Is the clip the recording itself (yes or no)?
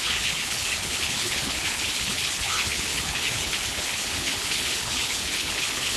no